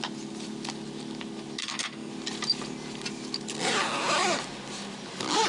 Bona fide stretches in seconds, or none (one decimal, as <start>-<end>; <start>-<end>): 0.0-1.6; 2.1-5.5